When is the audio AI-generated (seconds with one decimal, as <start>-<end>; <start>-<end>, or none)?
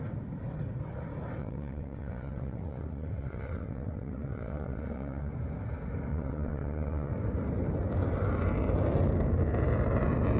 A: 1.4-5.3; 6.1-7.1